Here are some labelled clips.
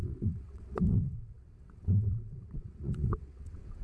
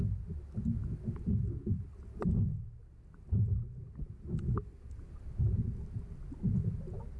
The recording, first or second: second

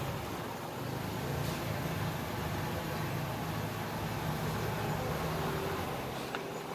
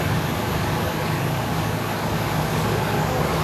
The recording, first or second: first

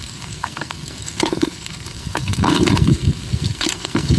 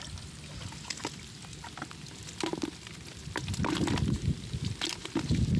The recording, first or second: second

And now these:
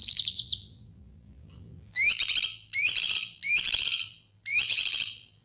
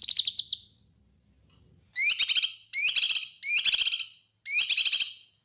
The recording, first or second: second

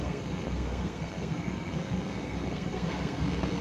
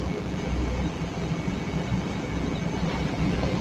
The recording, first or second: second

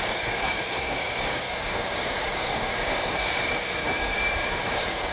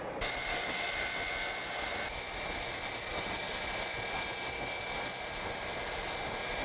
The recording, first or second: second